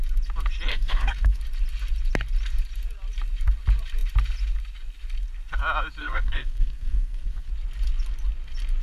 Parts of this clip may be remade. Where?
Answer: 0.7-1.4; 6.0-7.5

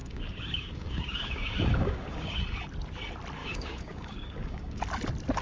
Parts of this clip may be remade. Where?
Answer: 0.0-2.4; 3.4-4.8

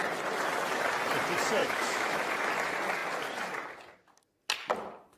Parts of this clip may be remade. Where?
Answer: 1.6-2.3